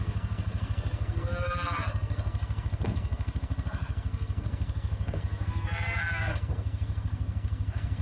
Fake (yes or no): yes